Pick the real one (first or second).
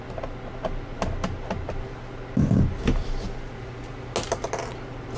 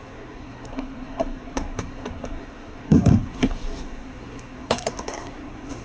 first